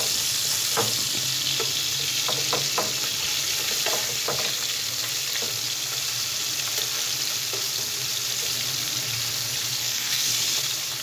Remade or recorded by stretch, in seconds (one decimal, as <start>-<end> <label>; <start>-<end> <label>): 0.0-9.8 recorded; 9.8-10.3 remade; 10.3-11.0 recorded

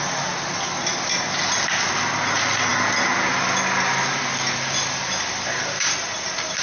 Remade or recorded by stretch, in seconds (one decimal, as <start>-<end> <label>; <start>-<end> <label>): 0.0-6.6 recorded

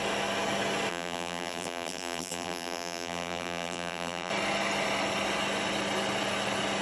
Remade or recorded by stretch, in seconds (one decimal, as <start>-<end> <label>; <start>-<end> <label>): 0.0-0.9 recorded; 0.9-4.3 remade; 4.3-6.8 recorded

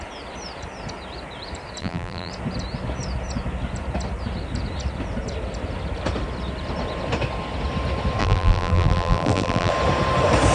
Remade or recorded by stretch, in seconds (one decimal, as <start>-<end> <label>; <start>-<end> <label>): 0.0-1.8 recorded; 1.8-2.3 remade; 2.3-8.2 recorded; 8.2-9.7 remade; 9.7-10.5 recorded

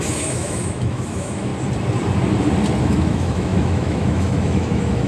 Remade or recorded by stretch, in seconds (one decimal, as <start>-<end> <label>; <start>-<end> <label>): 0.0-1.5 remade; 1.5-2.8 recorded; 2.8-5.1 remade

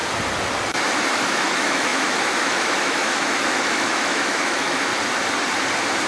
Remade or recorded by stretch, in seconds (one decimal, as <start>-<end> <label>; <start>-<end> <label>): 0.0-1.1 recorded; 1.1-4.9 remade; 4.9-6.1 recorded

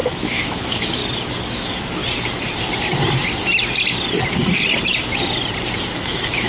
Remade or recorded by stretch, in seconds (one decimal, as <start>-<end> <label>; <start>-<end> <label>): 0.0-1.0 remade; 1.0-1.5 recorded; 1.5-2.0 remade; 2.0-5.8 recorded; 5.8-6.5 remade